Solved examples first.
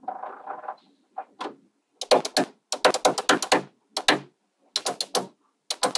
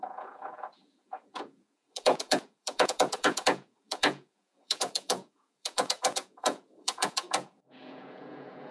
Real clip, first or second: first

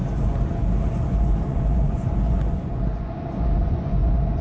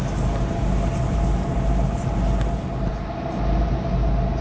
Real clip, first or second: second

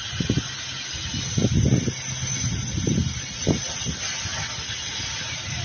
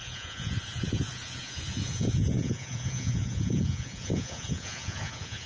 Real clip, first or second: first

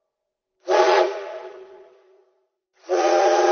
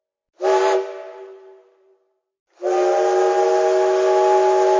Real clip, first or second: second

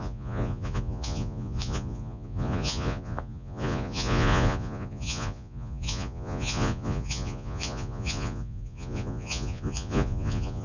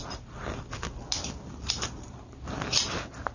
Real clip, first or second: second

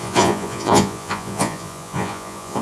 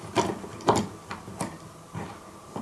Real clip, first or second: second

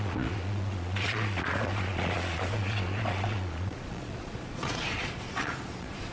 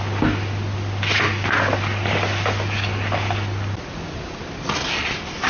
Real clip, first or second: second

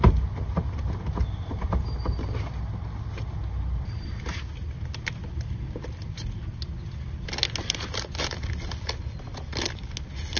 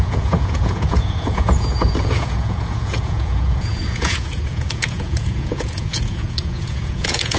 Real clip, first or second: first